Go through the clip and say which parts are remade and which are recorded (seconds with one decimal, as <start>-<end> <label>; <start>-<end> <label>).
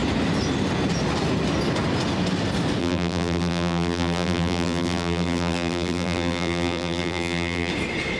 0.0-2.8 recorded; 2.8-7.7 remade; 7.7-8.2 recorded